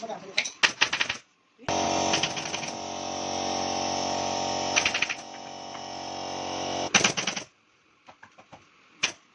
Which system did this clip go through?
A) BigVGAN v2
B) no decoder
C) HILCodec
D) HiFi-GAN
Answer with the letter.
B